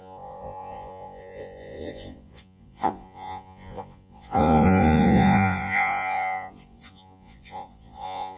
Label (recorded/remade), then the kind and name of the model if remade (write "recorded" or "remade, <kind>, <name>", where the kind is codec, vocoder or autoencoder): remade, vocoder, Vocos